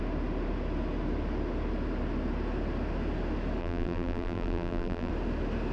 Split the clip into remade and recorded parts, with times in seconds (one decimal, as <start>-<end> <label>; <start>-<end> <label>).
0.0-3.6 recorded; 3.6-5.1 remade; 5.1-5.7 recorded